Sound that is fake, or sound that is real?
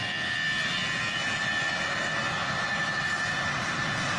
real